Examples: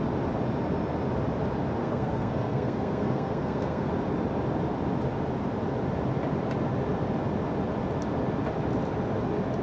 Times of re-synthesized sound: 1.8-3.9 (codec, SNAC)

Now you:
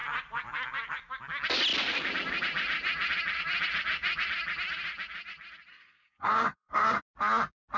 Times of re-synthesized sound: 5.7-7.0 (codec, SNAC)

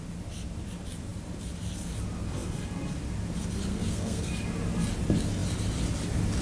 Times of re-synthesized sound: 3.7-4.3 (codec, SNAC)

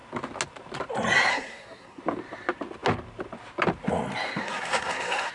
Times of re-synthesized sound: 1.3-2.0 (codec, SNAC); 4.4-5.3

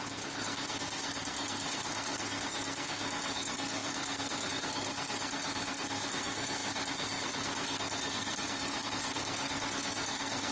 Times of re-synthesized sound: 0.0-10.5 (codec, SNAC)